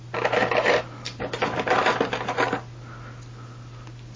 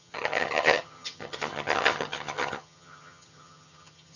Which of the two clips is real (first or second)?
first